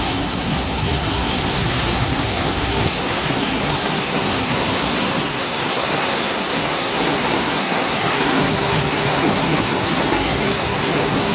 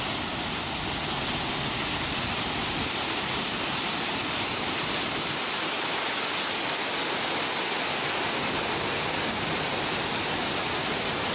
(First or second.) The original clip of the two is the second